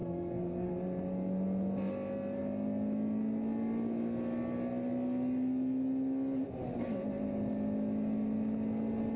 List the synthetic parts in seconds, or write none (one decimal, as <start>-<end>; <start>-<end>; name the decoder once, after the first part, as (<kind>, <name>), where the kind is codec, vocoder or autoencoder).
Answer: 0.0-0.7 (codec, SNAC)